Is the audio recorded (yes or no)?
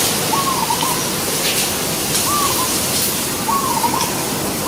yes